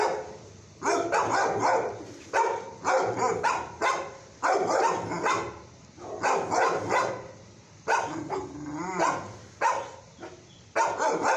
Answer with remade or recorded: recorded